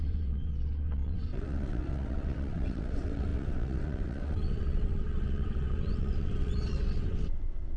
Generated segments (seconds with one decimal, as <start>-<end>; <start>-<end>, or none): 0.0-7.8